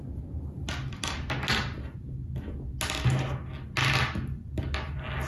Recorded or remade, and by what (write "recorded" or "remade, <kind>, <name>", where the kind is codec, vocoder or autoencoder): recorded